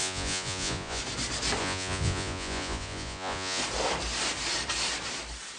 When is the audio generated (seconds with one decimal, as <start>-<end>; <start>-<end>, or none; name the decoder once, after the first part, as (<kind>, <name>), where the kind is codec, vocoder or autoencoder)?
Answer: 0.0-1.0 (vocoder, Vocos); 1.6-3.6